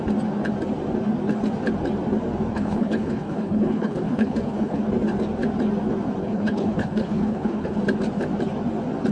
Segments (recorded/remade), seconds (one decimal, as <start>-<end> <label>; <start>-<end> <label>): 0.0-2.5 recorded; 2.5-4.8 remade; 4.8-6.2 recorded; 6.2-7.8 remade; 7.8-9.1 recorded